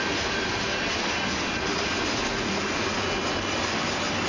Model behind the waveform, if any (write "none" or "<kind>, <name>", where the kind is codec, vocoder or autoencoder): none